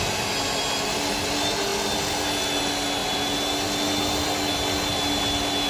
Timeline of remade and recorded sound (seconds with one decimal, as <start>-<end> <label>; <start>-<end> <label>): 0.0-5.7 recorded